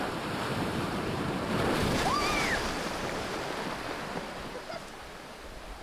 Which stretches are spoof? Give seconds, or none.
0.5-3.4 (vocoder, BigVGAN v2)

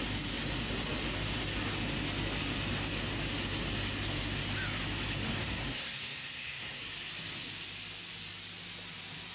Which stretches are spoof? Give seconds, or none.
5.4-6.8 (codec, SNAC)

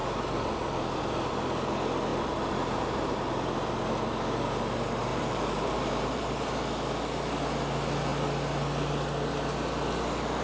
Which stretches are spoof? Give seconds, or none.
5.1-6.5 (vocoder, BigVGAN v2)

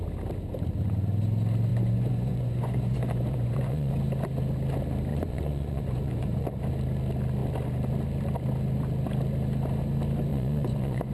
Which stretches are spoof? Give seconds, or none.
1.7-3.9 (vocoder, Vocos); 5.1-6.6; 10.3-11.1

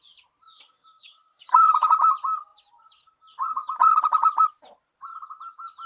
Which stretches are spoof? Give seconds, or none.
0.5-1.9 (codec, DAC)